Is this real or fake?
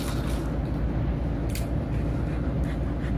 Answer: real